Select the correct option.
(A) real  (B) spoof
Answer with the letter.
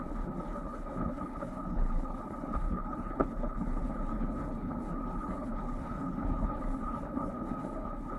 B